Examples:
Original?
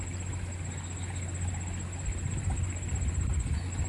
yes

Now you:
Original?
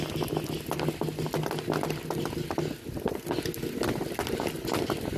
yes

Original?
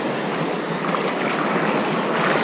yes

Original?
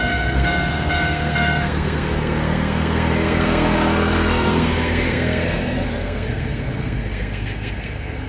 no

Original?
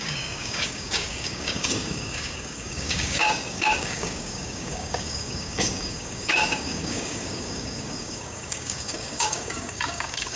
no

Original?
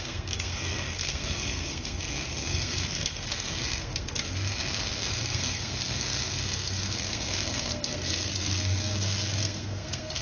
no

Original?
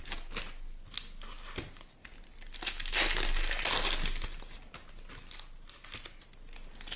yes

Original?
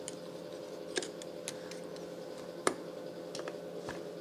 yes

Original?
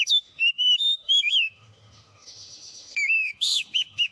no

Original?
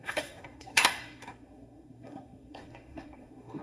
no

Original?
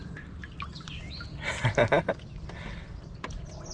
yes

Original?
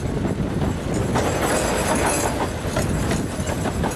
yes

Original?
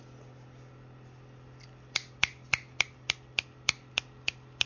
yes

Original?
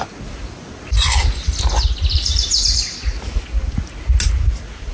yes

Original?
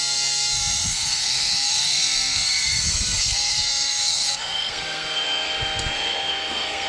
no